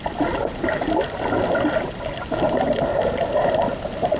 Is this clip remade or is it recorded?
recorded